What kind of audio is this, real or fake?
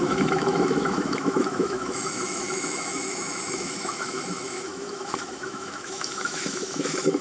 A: fake